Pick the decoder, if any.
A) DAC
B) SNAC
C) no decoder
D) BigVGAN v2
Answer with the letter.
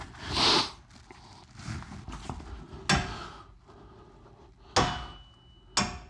C